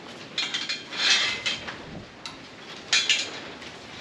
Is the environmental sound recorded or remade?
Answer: recorded